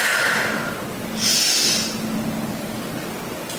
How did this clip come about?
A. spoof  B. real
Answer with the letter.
B